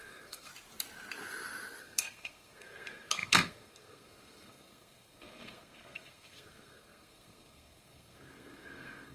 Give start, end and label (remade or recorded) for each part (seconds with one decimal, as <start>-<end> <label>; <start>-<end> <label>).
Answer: 0.0-0.5 remade; 0.5-1.8 recorded; 1.8-9.1 remade

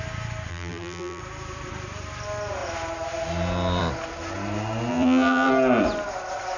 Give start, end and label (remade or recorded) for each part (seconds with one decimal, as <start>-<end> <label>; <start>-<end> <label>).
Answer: 0.0-0.5 recorded; 0.5-1.2 remade; 1.2-4.9 recorded; 4.9-5.5 remade; 5.5-6.6 recorded

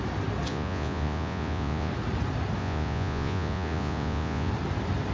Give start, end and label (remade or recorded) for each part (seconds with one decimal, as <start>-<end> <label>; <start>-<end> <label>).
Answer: 0.0-0.5 recorded; 0.5-1.9 remade; 1.9-2.6 recorded; 2.6-4.5 remade; 4.5-5.1 recorded

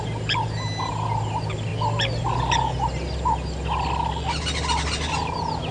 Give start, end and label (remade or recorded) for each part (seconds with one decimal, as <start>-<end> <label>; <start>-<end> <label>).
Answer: 0.0-5.7 recorded

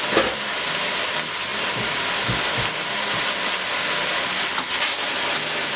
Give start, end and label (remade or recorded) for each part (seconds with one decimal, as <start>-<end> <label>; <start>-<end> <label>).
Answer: 0.0-5.8 recorded